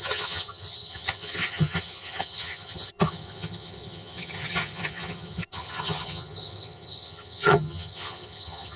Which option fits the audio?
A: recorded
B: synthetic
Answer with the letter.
B